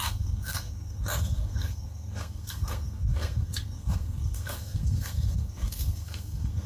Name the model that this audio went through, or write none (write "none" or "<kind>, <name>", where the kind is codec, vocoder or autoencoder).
codec, SNAC